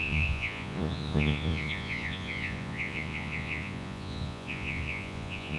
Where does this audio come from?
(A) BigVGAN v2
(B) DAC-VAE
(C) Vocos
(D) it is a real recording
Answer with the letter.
C